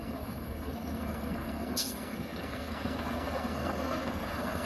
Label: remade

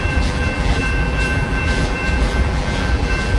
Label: remade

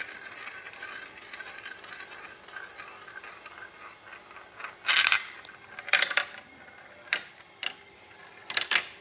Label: recorded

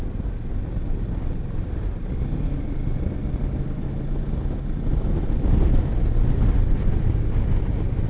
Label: recorded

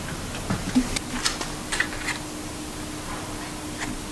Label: recorded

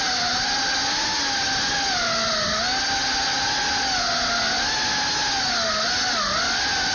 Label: recorded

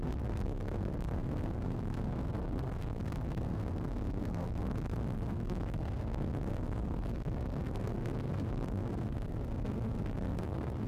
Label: remade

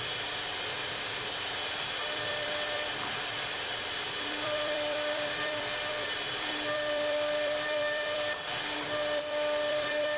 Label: remade